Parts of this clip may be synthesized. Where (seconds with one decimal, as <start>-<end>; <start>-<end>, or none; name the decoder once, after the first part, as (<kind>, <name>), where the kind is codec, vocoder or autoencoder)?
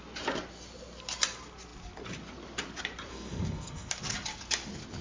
3.1-3.9 (codec, SNAC)